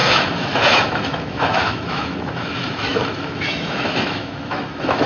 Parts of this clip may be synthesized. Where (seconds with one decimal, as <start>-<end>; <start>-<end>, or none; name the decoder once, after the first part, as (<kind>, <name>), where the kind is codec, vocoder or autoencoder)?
0.0-5.1 (autoencoder, DAC-VAE)